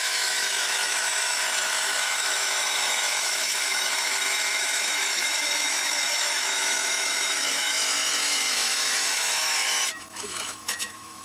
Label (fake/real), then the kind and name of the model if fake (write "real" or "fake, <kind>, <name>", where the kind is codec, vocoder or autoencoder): fake, autoencoder, DAC-VAE